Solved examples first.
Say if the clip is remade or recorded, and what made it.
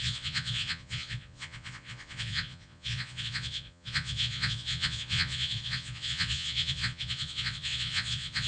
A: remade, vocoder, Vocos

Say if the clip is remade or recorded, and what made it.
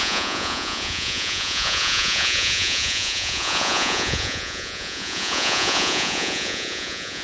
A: remade, vocoder, Vocos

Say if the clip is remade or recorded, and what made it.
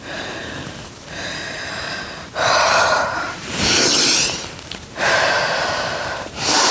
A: remade, vocoder, BigVGAN v2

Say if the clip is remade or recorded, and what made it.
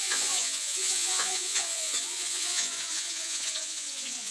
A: remade, vocoder, Vocos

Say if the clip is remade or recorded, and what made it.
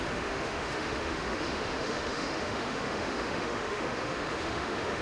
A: remade, autoencoder, DAC-VAE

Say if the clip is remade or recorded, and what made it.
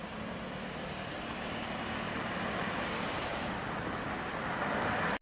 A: recorded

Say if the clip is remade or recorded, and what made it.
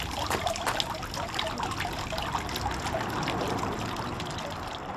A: recorded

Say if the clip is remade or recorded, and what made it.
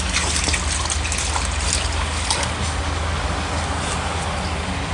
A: recorded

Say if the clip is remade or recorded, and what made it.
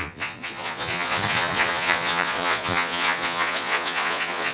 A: remade, vocoder, Vocos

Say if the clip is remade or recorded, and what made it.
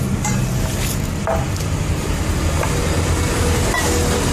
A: recorded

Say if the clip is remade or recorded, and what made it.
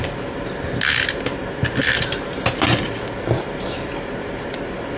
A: recorded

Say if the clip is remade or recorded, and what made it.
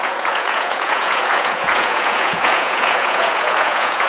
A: remade, vocoder, Vocos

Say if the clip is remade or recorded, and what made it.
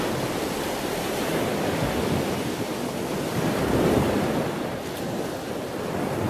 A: recorded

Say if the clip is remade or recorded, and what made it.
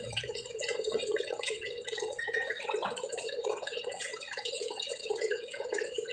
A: remade, vocoder, WaveNeXt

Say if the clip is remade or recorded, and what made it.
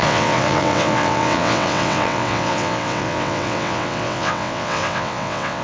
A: remade, vocoder, WaveNeXt